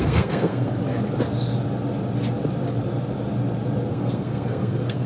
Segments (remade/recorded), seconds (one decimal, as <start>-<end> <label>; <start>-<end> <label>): 0.0-0.8 remade; 0.8-3.9 recorded; 3.9-5.1 remade